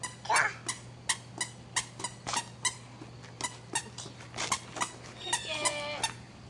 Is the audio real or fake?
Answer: real